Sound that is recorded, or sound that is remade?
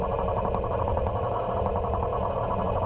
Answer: recorded